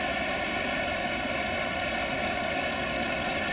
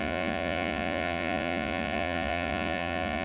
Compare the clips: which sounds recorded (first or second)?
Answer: first